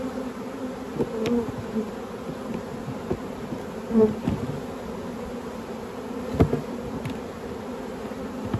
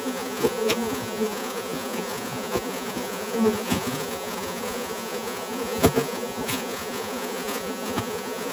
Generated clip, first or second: second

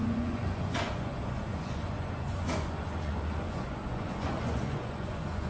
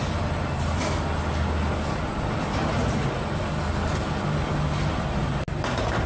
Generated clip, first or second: first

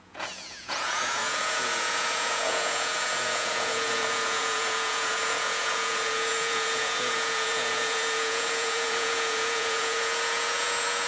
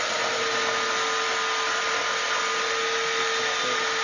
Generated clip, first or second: first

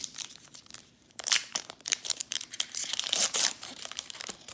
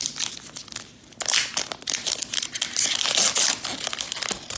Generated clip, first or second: first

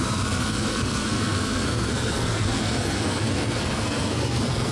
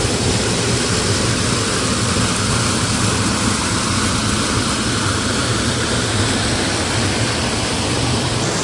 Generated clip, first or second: first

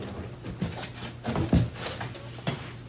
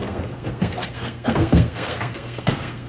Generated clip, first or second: second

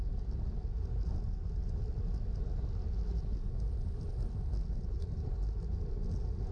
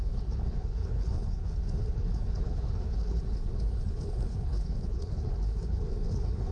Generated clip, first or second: second